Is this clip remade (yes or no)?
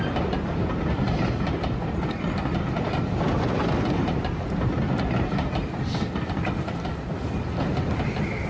no